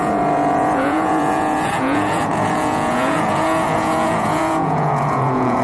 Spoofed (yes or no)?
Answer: yes